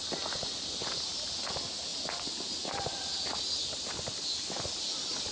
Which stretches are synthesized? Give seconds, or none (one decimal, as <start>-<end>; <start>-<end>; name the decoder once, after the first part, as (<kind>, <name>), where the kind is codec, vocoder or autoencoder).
none